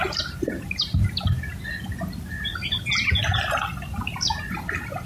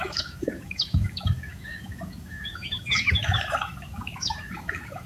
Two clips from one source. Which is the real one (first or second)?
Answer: first